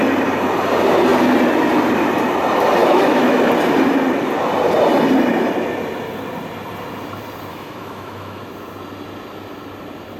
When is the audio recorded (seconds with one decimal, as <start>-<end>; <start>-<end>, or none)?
0.0-2.8; 3.5-7.5; 8.4-10.2